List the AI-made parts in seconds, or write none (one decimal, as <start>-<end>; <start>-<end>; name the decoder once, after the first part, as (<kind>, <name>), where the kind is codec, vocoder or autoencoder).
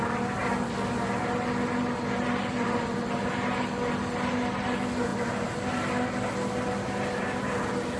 none